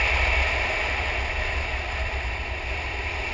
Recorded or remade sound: recorded